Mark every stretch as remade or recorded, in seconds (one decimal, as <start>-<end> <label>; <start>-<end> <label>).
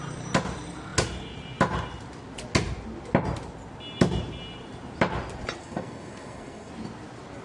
0.0-5.6 recorded; 5.6-6.7 remade; 6.7-7.4 recorded